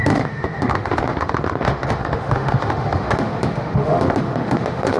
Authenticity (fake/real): fake